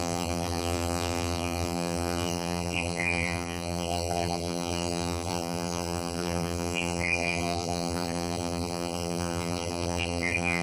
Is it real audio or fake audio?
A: fake